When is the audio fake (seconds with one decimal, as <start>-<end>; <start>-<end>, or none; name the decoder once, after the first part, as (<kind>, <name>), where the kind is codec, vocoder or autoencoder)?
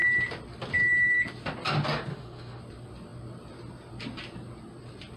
2.1-2.6 (autoencoder, DAC-VAE)